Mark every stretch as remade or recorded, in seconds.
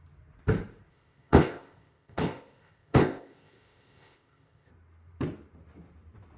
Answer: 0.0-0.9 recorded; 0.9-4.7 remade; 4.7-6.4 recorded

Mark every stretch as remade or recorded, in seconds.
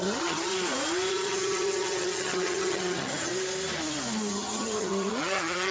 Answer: 0.0-0.5 remade; 0.5-1.1 recorded; 1.1-3.3 remade; 3.3-4.3 recorded; 4.3-5.7 remade